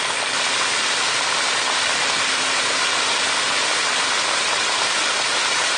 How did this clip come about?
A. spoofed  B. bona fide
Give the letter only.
B